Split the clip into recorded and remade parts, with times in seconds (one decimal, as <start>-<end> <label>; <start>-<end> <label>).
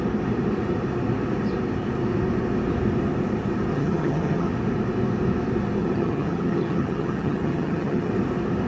0.0-3.7 recorded; 3.7-4.5 remade; 4.5-5.8 recorded; 5.8-8.1 remade; 8.1-8.7 recorded